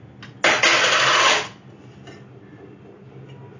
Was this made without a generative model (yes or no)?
yes